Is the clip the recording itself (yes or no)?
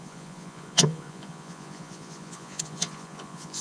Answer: no